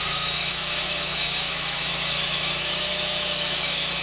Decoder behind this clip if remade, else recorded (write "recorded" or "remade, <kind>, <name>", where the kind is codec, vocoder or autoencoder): remade, autoencoder, DAC-VAE